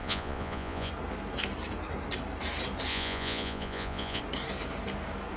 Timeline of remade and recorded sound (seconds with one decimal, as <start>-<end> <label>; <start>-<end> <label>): 0.0-0.9 remade; 0.9-2.9 recorded; 2.9-4.2 remade; 4.2-5.4 recorded